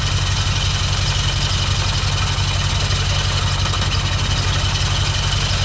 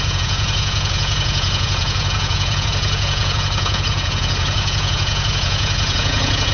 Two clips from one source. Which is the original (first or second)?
first